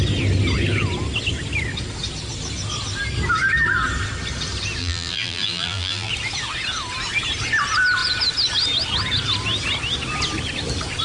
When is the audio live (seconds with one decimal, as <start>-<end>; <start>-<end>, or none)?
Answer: 0.0-4.8; 6.1-11.0